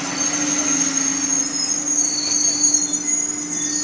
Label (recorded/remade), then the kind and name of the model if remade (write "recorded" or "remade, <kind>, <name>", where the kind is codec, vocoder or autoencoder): recorded